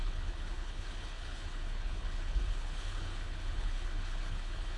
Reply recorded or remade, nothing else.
remade